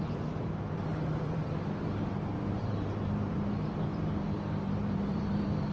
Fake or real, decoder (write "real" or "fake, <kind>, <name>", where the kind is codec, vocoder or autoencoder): fake, vocoder, BigVGAN v2